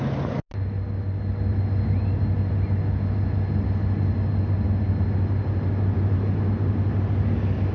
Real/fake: real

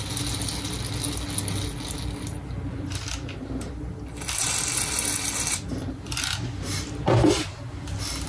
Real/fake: real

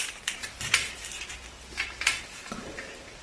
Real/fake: real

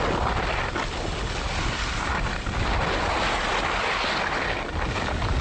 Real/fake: real